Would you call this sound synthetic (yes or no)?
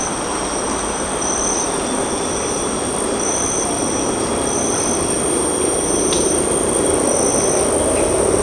no